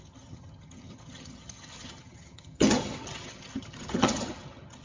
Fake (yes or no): yes